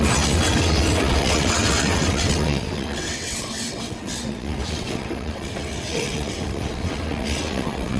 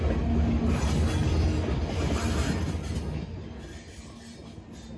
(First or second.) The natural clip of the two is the second